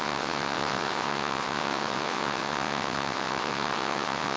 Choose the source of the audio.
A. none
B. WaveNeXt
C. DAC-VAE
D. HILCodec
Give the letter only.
B